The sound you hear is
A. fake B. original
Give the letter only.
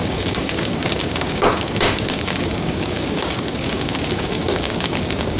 A